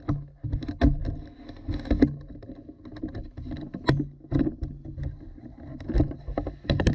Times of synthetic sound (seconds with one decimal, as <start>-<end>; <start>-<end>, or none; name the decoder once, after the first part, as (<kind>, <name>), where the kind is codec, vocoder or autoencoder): none